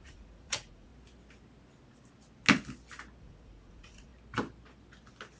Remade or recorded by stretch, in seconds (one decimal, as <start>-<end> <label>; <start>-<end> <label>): 0.0-0.9 remade; 0.9-3.2 recorded; 3.2-4.1 remade; 4.1-5.4 recorded